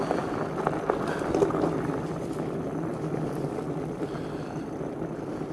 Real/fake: real